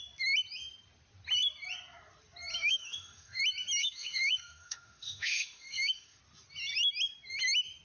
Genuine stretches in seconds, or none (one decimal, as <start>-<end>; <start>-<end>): 0.0-2.5; 3.4-3.8; 6.2-7.8